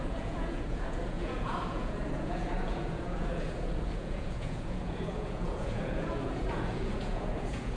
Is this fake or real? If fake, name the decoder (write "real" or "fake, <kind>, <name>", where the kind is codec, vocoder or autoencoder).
fake, vocoder, Vocos